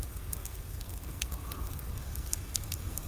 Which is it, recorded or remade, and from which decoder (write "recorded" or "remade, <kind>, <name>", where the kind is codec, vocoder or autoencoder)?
remade, codec, SNAC